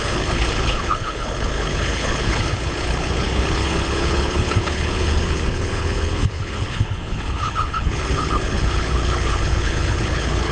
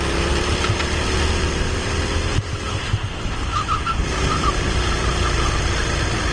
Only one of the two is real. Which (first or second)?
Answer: second